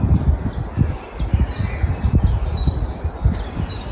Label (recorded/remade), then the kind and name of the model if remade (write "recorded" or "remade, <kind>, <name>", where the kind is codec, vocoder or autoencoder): recorded